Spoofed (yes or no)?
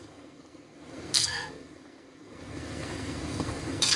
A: yes